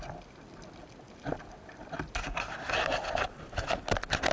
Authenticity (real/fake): real